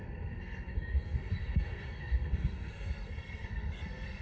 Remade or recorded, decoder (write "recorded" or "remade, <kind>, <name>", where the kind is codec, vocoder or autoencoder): remade, codec, SNAC